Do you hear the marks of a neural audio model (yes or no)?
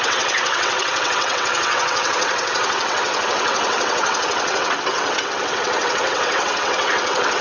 yes